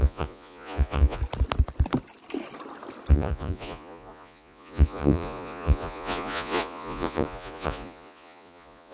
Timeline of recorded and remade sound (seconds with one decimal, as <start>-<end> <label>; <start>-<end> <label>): 0.0-1.2 remade; 1.2-3.1 recorded; 3.1-8.9 remade